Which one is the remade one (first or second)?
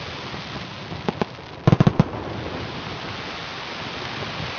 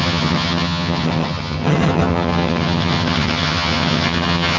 second